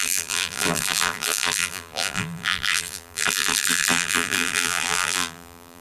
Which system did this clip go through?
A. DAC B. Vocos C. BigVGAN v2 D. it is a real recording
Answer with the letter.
C